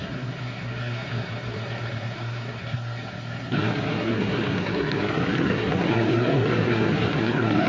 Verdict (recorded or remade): remade